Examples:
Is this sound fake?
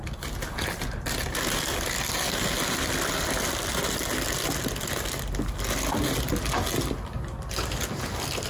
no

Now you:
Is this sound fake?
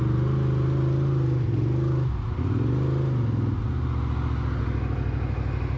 no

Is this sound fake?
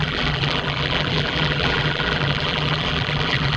yes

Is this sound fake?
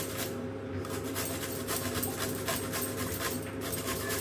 no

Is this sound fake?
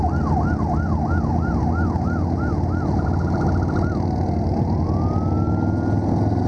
no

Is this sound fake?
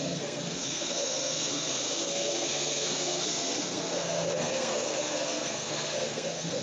yes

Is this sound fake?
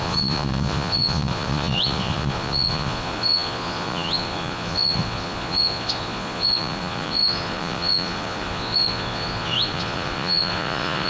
yes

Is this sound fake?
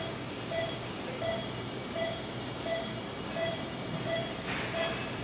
no